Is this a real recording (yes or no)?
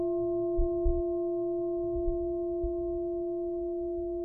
yes